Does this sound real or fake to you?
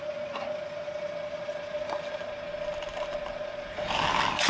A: real